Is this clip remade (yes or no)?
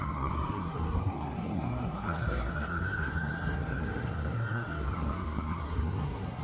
yes